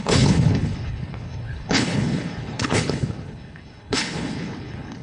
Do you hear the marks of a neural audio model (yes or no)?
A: yes